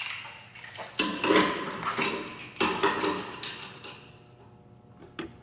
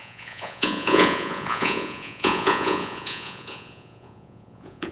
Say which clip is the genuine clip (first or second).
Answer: first